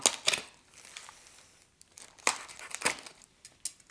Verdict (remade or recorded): recorded